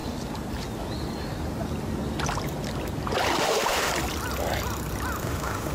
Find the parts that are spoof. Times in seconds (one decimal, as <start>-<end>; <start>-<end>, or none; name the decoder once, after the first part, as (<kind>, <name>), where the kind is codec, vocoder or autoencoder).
3.4-3.9 (autoencoder, DAC-VAE); 5.2-5.7